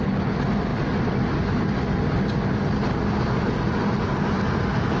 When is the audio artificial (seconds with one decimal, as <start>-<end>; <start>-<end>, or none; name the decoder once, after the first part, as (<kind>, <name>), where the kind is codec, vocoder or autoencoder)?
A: none